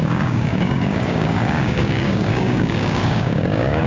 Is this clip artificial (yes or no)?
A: yes